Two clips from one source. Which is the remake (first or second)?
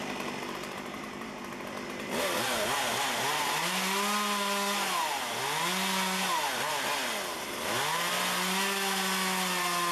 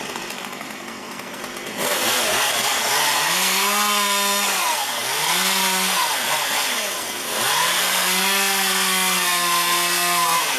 second